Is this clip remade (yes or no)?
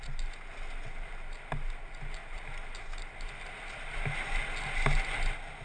no